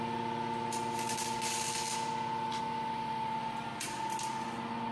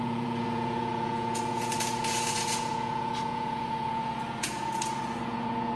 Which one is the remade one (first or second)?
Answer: second